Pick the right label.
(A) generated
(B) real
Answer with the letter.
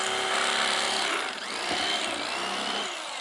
B